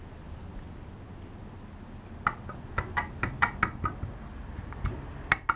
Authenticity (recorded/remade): recorded